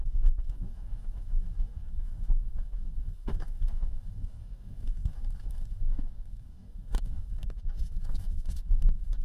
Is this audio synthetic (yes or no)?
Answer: yes